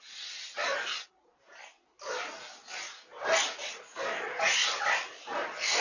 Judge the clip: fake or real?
real